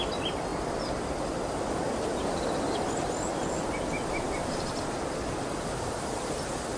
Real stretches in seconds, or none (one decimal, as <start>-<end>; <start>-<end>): 0.0-6.8